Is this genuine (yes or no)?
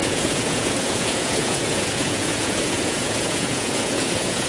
no